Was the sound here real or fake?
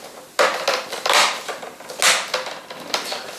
real